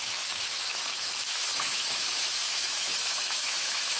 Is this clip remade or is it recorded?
remade